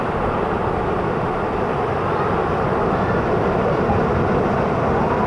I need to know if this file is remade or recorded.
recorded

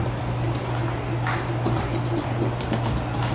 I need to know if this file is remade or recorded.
recorded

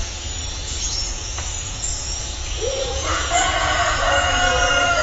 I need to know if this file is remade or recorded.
remade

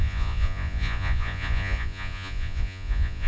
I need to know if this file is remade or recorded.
remade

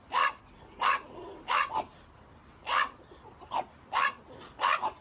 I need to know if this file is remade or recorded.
recorded